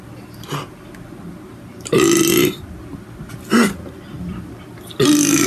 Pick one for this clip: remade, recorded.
recorded